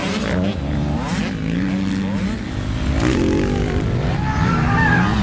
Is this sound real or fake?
real